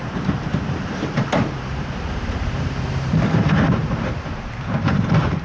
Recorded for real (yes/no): no